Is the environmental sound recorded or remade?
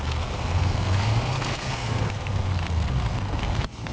remade